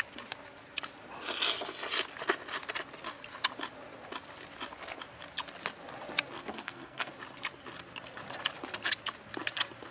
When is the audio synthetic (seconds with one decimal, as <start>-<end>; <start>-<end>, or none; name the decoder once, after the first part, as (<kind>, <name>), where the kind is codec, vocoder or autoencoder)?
6.5-7.1 (codec, SNAC)